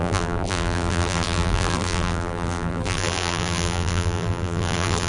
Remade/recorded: remade